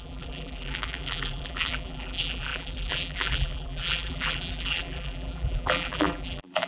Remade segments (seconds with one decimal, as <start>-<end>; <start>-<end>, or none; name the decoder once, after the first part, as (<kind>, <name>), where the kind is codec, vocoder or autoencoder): 0.0-6.7 (vocoder, BigVGAN v2)